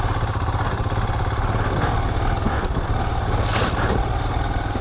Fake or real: real